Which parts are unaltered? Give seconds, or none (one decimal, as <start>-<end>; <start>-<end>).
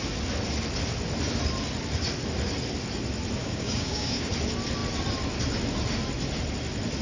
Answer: 0.0-3.4; 4.3-7.0